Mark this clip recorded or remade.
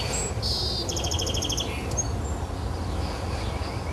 recorded